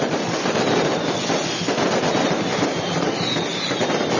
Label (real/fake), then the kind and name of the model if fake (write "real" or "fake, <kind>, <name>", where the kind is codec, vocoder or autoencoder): real